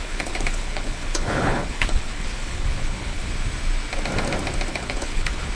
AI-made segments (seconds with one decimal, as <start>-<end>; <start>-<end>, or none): 0.0-3.3; 4.7-5.5